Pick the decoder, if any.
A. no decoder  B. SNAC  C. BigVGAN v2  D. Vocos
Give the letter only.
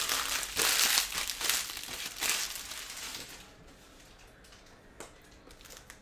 A